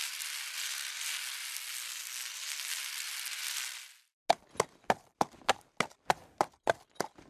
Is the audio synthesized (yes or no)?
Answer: no